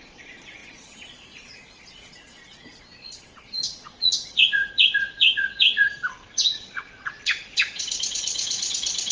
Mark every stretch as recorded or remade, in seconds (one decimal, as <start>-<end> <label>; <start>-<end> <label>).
0.0-9.1 remade

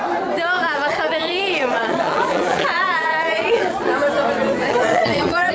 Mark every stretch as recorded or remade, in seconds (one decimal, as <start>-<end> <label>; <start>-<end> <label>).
0.0-0.6 recorded; 0.6-3.9 remade; 3.9-4.7 recorded; 4.7-5.5 remade

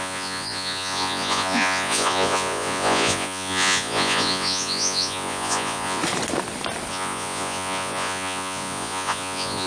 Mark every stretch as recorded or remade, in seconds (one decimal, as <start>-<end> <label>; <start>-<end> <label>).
0.0-6.0 remade; 6.0-6.9 recorded; 6.9-9.7 remade

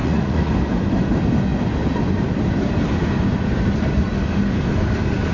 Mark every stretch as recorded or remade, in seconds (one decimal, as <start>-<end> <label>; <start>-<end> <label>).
0.0-0.5 remade; 0.5-5.3 recorded

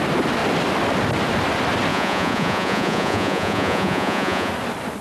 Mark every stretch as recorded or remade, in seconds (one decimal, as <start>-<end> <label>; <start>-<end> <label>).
0.0-1.9 recorded; 1.9-4.5 remade; 4.5-5.0 recorded

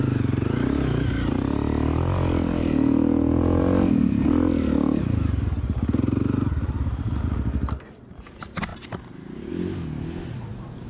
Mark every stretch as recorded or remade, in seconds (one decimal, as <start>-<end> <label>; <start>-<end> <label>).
0.0-10.9 recorded

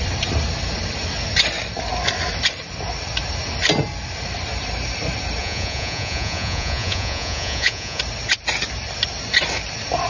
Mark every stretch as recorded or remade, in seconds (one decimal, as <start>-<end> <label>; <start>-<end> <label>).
0.0-5.4 recorded; 5.4-8.0 remade; 8.0-10.1 recorded

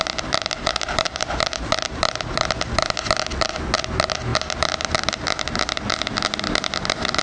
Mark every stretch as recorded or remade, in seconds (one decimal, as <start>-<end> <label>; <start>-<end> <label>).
0.0-7.2 recorded